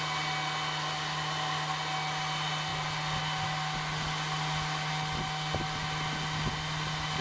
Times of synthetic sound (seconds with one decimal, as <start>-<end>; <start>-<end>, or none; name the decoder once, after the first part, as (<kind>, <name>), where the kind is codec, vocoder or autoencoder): none